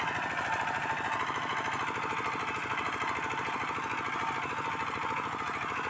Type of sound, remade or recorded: remade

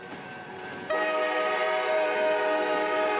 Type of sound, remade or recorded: remade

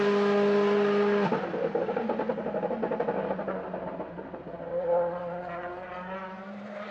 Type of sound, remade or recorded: recorded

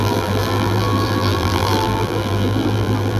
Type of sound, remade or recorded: remade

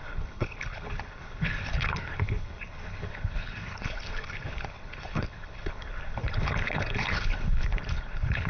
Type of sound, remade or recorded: remade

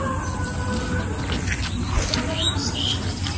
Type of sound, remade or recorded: recorded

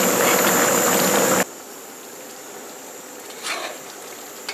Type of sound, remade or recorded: recorded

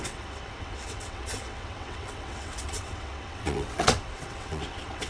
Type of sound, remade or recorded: remade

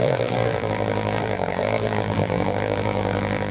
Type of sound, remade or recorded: remade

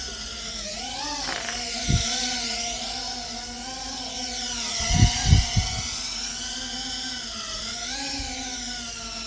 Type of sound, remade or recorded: recorded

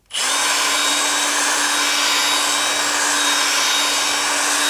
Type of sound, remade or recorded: recorded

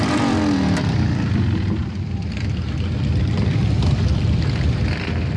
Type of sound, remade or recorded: remade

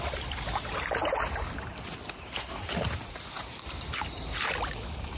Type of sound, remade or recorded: recorded